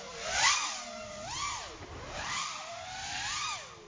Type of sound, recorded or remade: recorded